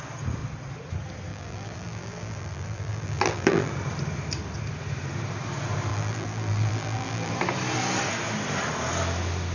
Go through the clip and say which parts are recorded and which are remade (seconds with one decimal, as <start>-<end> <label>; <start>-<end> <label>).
0.0-1.3 recorded; 1.3-3.7 remade; 3.7-5.9 recorded; 5.9-7.3 remade; 7.3-9.5 recorded